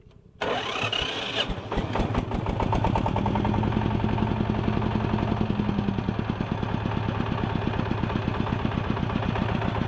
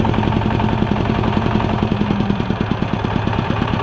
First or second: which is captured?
first